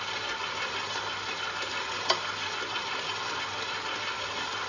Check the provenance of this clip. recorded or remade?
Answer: recorded